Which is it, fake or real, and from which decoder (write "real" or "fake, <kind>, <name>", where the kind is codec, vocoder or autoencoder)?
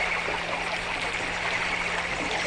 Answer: real